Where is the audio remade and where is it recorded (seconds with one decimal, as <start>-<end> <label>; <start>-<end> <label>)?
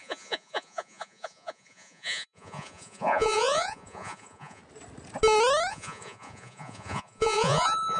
0.0-4.6 remade; 4.6-5.7 recorded; 5.7-8.0 remade